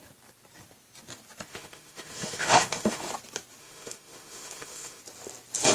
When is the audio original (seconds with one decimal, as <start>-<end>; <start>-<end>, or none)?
0.0-1.5; 3.1-3.6; 5.0-5.7